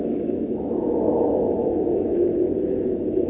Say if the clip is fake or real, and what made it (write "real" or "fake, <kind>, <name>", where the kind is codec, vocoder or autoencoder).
fake, autoencoder, DAC-VAE